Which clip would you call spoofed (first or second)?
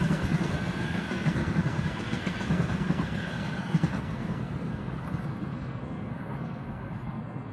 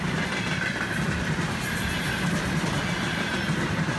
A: first